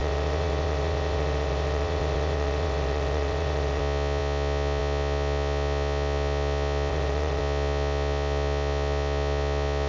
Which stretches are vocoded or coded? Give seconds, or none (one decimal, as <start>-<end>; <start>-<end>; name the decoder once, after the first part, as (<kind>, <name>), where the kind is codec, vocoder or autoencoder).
0.0-3.8 (vocoder, WaveNeXt); 6.9-7.4

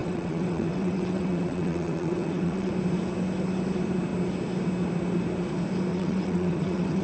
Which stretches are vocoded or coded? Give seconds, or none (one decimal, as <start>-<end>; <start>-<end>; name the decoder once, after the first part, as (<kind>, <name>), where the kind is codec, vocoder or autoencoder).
0.0-2.7 (vocoder, WaveNeXt); 5.9-7.0